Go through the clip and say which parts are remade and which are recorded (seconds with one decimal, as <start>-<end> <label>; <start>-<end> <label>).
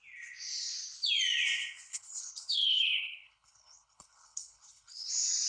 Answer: 0.0-1.9 recorded; 1.9-5.1 remade; 5.1-5.5 recorded